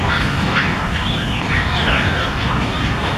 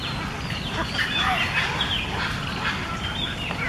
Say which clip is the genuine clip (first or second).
second